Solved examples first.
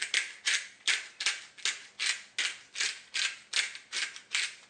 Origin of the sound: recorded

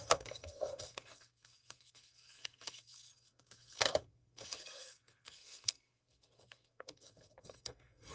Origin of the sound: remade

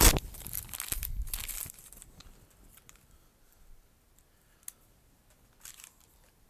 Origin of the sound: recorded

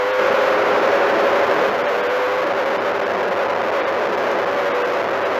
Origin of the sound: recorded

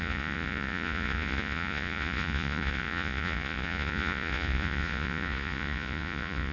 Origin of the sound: remade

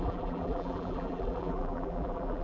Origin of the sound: remade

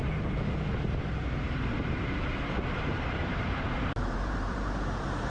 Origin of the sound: remade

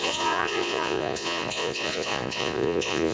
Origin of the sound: remade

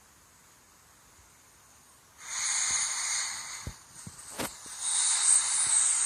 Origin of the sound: recorded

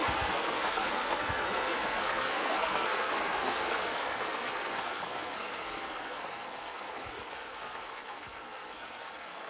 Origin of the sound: remade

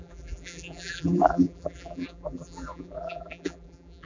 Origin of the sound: remade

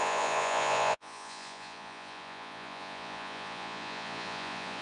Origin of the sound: remade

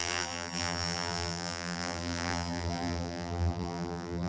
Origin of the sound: remade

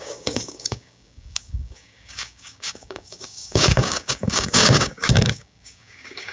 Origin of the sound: remade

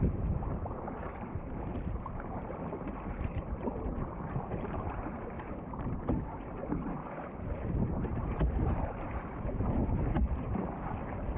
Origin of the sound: remade